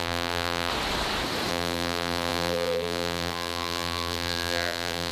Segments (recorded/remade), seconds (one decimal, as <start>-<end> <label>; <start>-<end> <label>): 0.0-0.7 remade; 0.7-1.5 recorded; 1.5-5.1 remade